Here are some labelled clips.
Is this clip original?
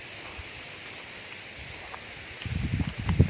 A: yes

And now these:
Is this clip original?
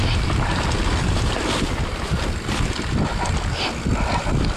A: yes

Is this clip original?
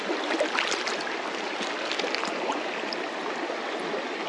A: yes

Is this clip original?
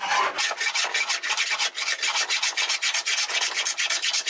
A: yes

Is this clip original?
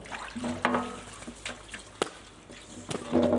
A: yes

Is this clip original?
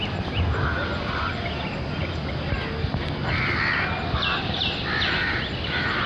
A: yes